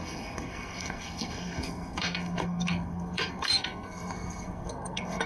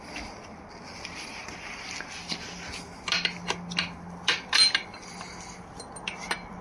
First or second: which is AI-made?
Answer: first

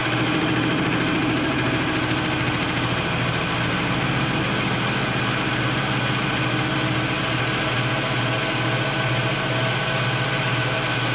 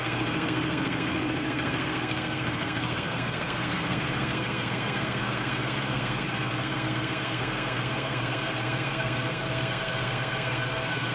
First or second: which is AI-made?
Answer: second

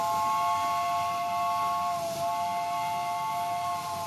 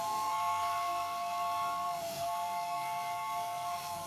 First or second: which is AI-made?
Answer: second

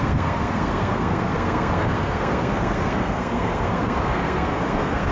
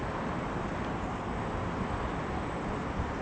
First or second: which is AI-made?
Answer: first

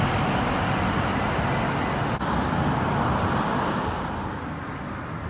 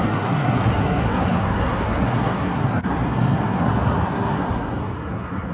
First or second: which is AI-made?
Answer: second